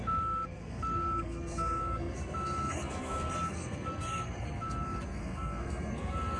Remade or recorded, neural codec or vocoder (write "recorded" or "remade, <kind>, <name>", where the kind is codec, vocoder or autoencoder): remade, codec, SNAC